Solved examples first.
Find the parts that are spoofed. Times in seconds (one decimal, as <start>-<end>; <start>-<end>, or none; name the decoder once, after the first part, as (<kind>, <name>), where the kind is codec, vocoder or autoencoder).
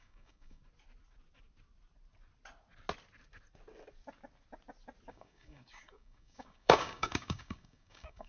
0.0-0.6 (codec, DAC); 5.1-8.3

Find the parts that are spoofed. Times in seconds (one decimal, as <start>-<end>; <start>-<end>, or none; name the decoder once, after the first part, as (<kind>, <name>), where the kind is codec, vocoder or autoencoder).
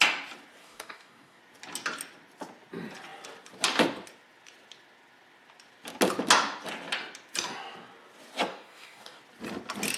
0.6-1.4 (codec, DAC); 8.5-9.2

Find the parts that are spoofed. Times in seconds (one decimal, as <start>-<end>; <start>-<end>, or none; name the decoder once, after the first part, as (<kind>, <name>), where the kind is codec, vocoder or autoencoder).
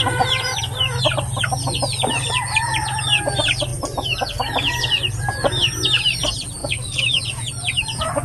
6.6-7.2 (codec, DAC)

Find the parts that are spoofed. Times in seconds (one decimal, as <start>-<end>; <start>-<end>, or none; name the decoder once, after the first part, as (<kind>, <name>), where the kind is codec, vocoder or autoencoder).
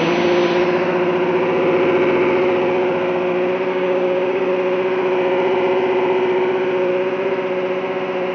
3.7-4.5 (codec, DAC)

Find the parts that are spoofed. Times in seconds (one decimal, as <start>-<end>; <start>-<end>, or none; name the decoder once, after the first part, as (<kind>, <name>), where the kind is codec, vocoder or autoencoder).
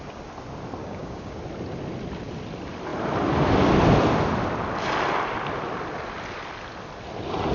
0.8-1.4 (codec, DAC)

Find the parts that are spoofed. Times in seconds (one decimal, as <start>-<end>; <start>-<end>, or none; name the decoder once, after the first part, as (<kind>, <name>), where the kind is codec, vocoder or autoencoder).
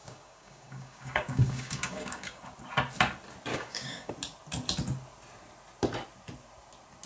0.0-2.4 (codec, DAC); 3.5-4.1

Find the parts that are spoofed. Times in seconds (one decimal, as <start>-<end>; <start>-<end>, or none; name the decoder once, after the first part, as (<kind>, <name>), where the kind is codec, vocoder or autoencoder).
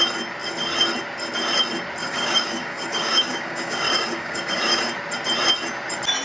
2.0-4.9 (codec, DAC)